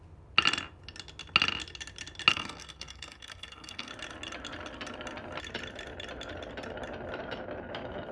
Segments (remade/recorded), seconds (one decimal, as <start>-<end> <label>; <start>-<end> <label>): 0.0-2.3 recorded; 2.3-3.9 remade; 3.9-8.1 recorded